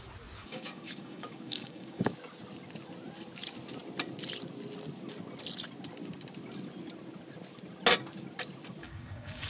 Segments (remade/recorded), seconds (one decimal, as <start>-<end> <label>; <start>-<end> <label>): 0.0-0.4 recorded; 0.4-2.1 remade; 2.1-8.8 recorded; 8.8-9.5 remade